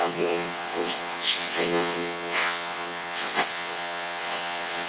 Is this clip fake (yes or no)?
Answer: yes